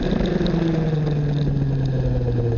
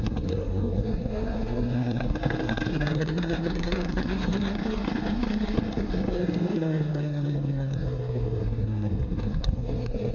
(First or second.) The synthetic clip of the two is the second